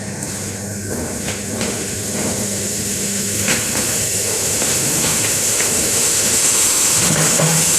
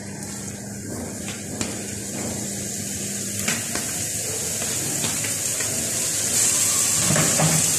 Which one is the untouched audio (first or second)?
second